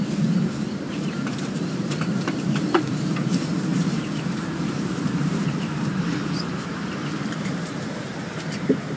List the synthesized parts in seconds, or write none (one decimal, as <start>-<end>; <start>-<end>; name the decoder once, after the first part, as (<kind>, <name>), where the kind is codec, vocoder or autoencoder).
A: 0.0-3.7 (vocoder, BigVGAN v2); 4.7-9.0